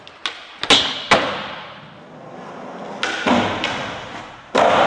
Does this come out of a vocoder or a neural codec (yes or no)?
no